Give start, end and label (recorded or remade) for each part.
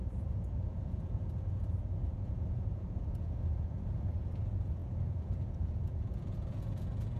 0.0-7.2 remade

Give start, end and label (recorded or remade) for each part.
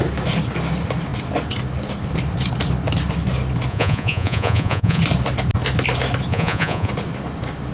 0.0-3.7 recorded; 3.7-5.0 remade; 5.0-6.3 recorded; 6.3-6.9 remade; 6.9-7.7 recorded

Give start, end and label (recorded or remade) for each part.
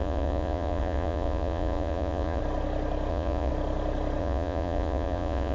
0.0-2.4 remade; 2.4-3.1 recorded; 3.1-3.5 remade; 3.5-4.2 recorded; 4.2-5.5 remade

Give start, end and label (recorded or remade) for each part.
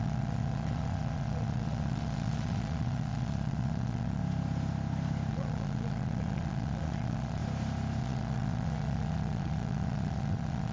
0.0-4.2 remade; 4.2-5.3 recorded; 5.3-7.4 remade; 7.4-8.0 recorded; 8.0-10.7 remade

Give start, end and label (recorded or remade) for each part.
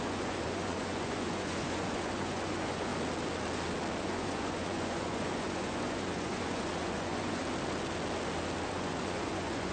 0.0-2.9 remade; 2.9-4.0 recorded; 4.0-7.4 remade; 7.4-8.7 recorded; 8.7-9.7 remade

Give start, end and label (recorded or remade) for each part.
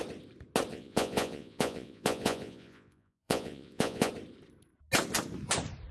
0.0-0.7 recorded; 0.7-4.1 remade; 4.1-5.9 recorded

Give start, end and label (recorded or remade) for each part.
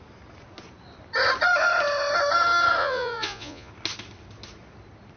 0.0-2.8 recorded; 2.8-3.7 remade; 3.7-5.2 recorded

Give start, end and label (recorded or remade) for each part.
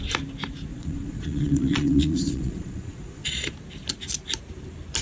0.0-0.7 recorded; 0.7-3.5 remade; 3.5-5.0 recorded